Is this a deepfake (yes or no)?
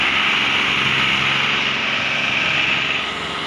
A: no